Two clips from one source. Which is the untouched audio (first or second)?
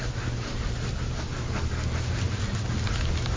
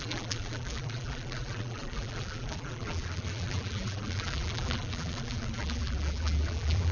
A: first